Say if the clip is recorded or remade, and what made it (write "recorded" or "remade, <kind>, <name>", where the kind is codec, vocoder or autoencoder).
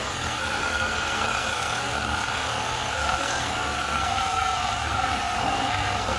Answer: remade, codec, SNAC